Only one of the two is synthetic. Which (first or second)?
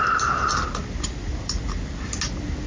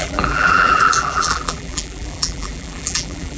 second